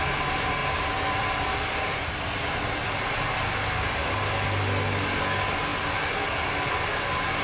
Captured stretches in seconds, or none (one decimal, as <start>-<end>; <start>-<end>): 0.0-0.6; 3.2-7.4